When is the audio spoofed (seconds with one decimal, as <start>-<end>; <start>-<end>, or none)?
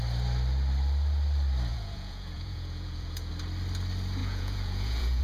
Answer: 1.7-3.3; 4.2-5.2